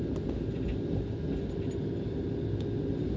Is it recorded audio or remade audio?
recorded